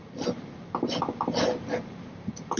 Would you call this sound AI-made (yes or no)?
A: no